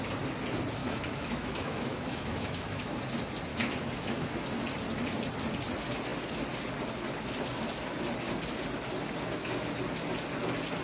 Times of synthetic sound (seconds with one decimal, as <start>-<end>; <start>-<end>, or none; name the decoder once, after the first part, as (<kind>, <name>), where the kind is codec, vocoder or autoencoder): 0.8-3.0 (autoencoder, DAC-VAE); 3.5-4.3